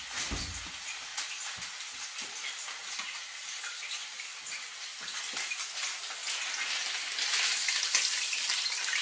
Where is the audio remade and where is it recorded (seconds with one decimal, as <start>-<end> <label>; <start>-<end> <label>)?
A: 0.0-9.0 recorded